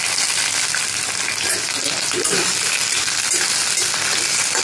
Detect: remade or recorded recorded